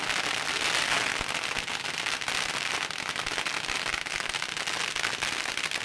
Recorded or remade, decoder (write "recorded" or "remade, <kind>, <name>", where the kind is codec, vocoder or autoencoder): recorded